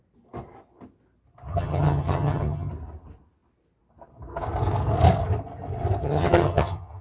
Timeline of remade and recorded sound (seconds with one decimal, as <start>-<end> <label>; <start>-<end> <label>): 0.0-1.5 recorded; 1.5-2.7 remade; 2.7-6.0 recorded; 6.0-7.0 remade